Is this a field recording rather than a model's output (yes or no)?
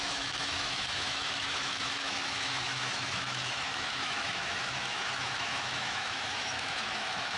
no